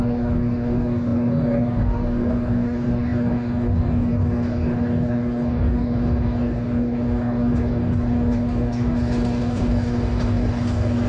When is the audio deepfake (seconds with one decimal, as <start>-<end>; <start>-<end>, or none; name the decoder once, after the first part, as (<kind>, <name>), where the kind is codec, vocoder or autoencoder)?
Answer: 0.0-11.1 (codec, DAC)